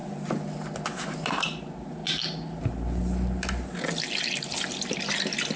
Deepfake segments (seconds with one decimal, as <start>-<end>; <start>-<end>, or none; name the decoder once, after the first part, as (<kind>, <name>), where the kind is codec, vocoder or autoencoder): 1.0-2.0 (vocoder, BigVGAN v2); 5.0-5.6